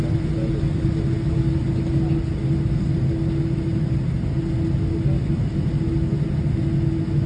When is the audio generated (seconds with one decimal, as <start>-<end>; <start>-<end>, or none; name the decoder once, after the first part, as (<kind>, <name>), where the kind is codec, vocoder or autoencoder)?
none